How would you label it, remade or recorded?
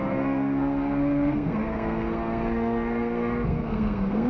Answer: remade